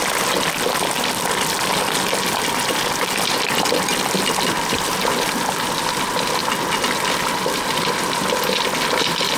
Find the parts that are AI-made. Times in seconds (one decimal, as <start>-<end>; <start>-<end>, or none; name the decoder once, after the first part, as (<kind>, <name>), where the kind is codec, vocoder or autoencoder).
none